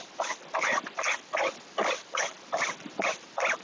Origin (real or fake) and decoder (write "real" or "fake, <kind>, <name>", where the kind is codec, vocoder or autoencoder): real